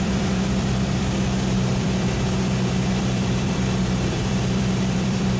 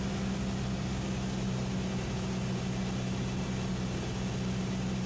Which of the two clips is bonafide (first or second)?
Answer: second